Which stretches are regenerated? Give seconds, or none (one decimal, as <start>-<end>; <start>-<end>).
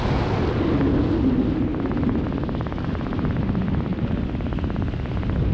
none